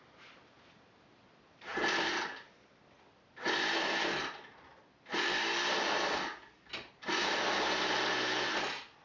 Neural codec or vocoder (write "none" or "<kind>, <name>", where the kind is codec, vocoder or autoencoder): none